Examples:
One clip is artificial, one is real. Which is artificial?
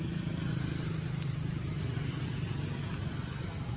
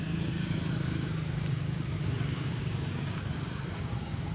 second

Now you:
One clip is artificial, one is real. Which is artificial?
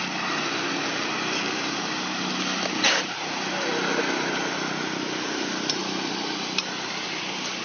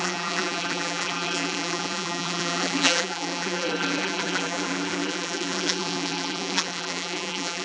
second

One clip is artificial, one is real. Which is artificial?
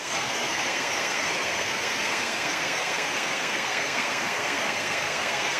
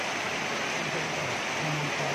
first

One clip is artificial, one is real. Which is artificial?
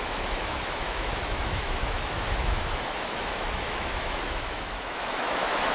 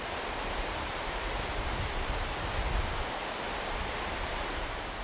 first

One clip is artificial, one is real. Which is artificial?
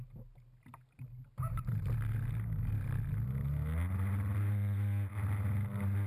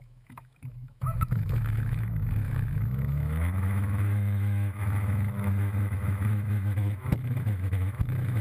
second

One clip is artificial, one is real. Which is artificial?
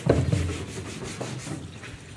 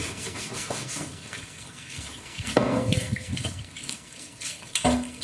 second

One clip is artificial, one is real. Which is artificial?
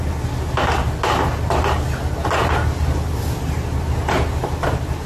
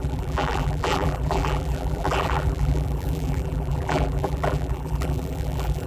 second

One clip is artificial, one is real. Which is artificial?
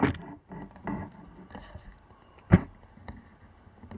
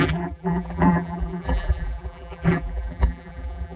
second